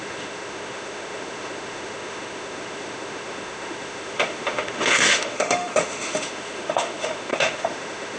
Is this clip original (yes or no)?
no